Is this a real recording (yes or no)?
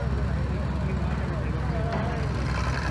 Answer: yes